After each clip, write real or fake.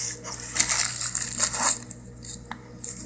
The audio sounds real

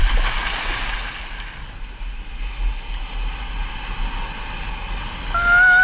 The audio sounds real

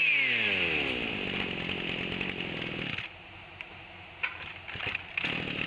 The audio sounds real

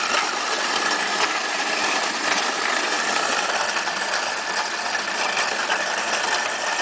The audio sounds real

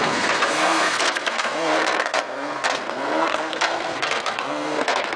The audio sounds fake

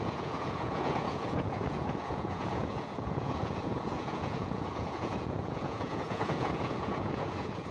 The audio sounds fake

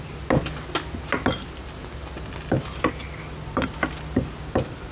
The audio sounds real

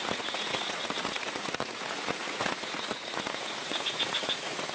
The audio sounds fake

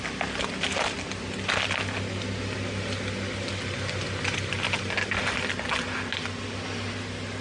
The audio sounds real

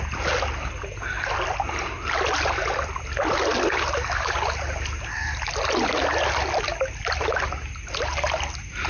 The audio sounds real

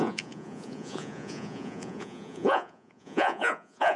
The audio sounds fake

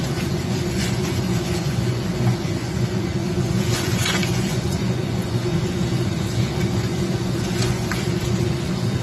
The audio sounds fake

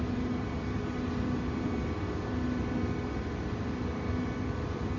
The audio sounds real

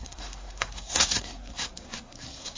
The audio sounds fake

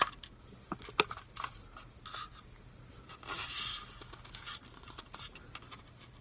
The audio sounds real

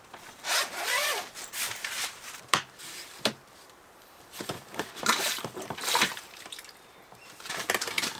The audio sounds fake